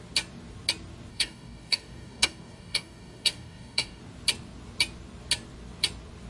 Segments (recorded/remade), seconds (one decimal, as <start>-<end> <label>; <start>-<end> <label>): 0.0-1.1 recorded; 1.1-4.0 remade; 4.0-6.3 recorded